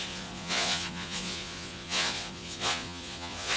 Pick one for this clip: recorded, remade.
remade